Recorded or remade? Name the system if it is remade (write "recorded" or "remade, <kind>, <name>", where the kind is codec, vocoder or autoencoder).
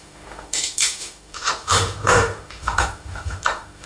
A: remade, autoencoder, DAC-VAE